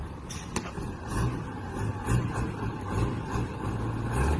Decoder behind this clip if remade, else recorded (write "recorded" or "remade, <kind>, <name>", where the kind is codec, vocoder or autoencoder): recorded